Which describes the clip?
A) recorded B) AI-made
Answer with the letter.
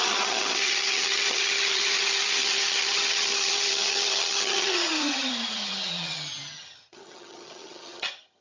B